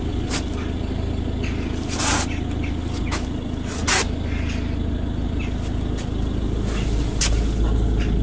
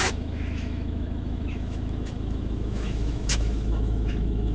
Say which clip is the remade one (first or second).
second